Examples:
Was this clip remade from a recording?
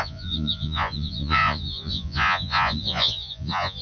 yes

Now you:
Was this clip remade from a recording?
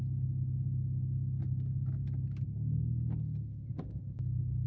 no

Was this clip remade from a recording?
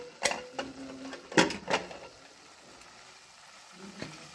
no